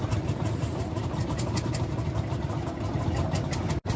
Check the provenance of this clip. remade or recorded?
remade